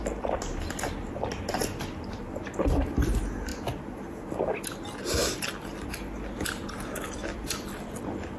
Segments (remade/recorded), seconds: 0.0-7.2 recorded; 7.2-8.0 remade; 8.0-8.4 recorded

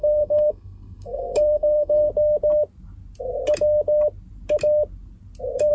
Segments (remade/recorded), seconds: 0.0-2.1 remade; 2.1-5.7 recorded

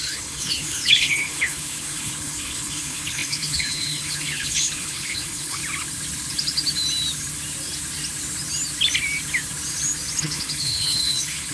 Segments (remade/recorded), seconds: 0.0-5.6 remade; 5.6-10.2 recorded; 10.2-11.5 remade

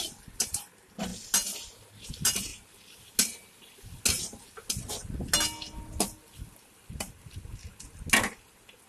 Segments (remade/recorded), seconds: 0.0-8.9 recorded

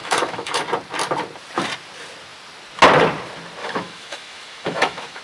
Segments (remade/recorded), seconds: 0.0-0.6 remade; 0.6-3.6 recorded; 3.6-5.2 remade

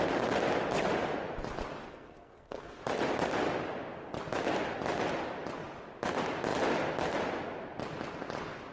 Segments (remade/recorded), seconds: 0.0-1.9 recorded; 1.9-2.8 remade; 2.8-8.7 recorded